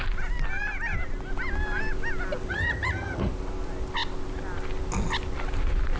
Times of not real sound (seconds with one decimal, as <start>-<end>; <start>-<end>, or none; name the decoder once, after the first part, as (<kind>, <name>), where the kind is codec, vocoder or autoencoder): 2.5-3.3 (vocoder, HiFi-GAN)